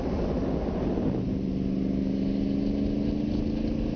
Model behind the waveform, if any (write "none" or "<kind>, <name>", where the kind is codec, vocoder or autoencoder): none